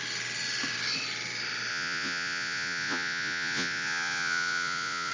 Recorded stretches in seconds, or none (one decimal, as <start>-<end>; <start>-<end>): 0.0-1.7